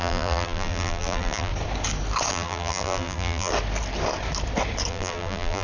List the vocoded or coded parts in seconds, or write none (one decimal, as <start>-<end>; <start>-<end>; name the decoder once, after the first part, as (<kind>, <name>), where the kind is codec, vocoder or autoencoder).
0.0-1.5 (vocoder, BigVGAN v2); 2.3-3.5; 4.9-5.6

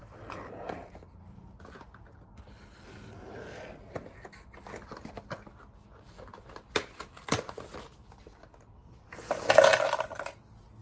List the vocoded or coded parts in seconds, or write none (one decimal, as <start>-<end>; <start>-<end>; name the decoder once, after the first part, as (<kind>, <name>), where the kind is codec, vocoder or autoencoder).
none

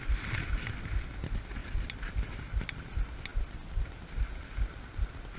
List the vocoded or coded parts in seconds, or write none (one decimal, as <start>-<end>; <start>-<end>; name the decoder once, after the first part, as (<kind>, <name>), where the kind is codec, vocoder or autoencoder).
none

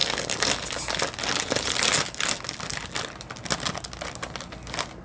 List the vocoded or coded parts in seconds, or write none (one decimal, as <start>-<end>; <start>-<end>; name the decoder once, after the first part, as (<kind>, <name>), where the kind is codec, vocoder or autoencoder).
none

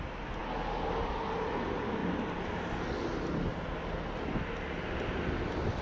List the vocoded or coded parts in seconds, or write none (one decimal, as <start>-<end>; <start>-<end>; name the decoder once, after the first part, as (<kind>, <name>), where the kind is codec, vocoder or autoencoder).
none

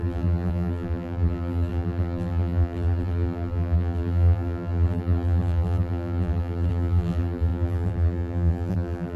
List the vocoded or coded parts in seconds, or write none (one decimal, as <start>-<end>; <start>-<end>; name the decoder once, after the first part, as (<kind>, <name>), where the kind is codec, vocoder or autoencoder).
0.0-9.2 (vocoder, BigVGAN v2)

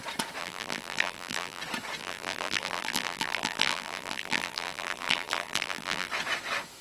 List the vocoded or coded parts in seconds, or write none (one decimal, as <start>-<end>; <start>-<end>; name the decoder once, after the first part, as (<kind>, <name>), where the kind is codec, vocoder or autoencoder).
0.4-1.6 (vocoder, BigVGAN v2); 2.0-6.1